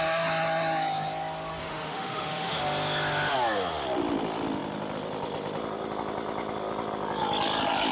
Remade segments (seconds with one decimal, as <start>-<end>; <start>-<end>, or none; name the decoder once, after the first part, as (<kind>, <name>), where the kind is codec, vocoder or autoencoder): 1.6-2.6 (autoencoder, DAC-VAE)